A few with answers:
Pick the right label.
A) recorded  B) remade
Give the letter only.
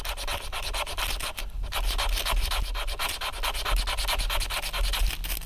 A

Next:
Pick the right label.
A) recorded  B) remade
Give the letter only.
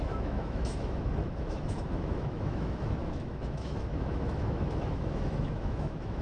B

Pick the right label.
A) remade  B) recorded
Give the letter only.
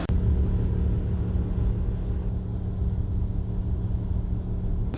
B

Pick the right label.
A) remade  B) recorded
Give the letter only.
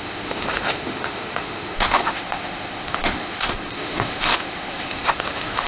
A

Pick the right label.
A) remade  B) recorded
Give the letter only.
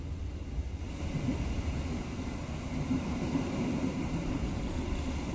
B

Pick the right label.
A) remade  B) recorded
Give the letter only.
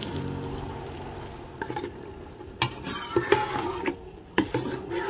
B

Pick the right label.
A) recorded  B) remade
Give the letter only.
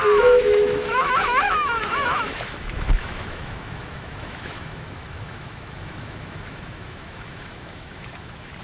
B